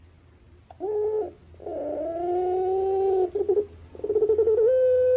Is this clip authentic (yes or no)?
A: yes